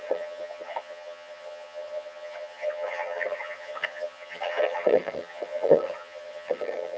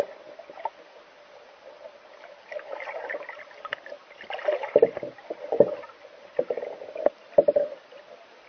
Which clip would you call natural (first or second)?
second